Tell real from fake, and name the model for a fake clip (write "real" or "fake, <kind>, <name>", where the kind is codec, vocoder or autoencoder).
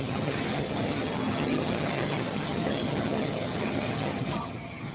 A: fake, vocoder, HiFi-GAN